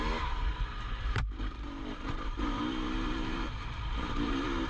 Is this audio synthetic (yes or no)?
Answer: yes